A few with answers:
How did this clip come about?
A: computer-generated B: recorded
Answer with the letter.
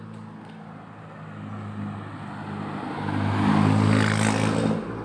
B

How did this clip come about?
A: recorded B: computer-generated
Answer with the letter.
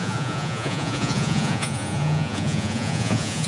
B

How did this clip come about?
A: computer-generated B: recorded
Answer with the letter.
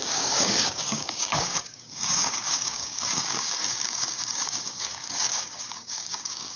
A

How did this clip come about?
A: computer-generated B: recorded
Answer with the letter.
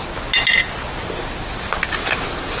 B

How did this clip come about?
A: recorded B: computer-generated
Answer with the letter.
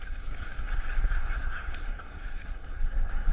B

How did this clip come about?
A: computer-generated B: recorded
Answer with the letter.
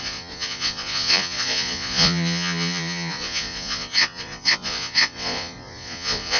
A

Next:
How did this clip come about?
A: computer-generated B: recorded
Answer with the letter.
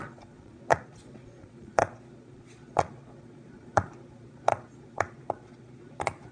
A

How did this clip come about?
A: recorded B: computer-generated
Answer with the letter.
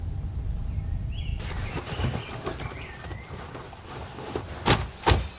A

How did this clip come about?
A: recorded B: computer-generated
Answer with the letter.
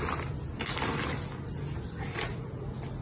A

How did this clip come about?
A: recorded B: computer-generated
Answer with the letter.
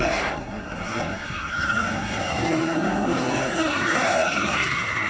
B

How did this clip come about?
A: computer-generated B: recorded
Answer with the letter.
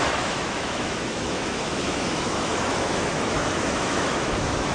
A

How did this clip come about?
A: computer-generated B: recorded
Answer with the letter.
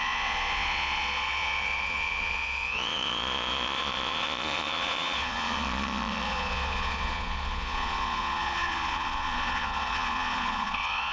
A